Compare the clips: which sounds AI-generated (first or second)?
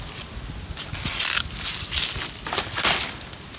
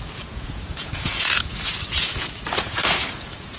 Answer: second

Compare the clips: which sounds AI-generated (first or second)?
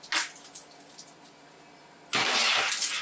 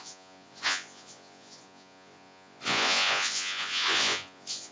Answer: second